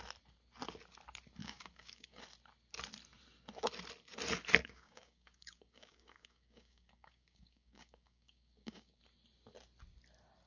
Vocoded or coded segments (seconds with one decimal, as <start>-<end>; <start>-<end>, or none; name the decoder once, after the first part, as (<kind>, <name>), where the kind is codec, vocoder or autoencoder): 1.4-2.2 (codec, DAC); 4.6-9.0